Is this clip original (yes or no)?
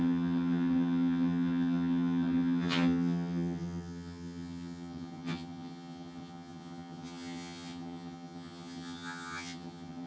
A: no